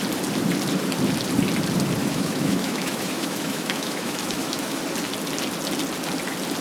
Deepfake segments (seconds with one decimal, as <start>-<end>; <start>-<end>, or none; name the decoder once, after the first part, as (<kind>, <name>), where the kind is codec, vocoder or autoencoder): 2.0-4.8 (autoencoder, DAC-VAE)

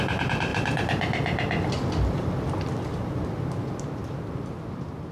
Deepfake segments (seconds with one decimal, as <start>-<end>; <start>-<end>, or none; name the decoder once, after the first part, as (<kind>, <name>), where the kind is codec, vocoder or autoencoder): none